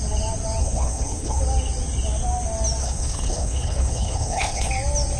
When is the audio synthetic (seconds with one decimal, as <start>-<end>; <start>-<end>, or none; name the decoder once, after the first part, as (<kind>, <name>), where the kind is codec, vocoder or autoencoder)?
0.6-1.4 (codec, HILCodec); 2.8-4.7